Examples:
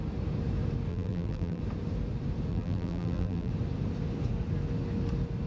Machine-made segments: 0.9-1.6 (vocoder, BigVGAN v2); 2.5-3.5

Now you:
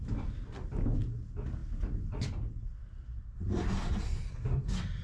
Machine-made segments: none

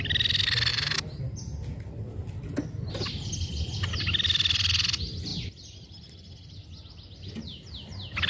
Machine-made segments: 0.7-1.2 (vocoder, BigVGAN v2)

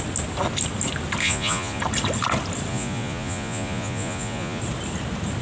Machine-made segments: 1.2-1.8 (vocoder, Vocos); 2.7-4.6

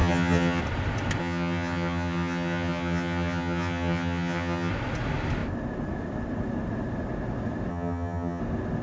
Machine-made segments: 0.0-0.6 (vocoder, HiFi-GAN); 1.2-4.7; 7.7-8.4

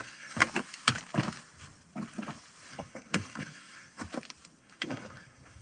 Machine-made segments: 0.0-0.4 (codec, SNAC); 2.7-4.0; 4.6-5.6

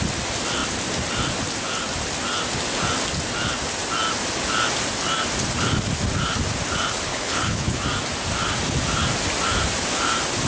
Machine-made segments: 7.1-7.8 (codec, HILCodec)